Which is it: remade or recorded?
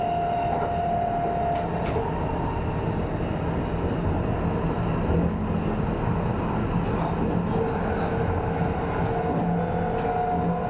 recorded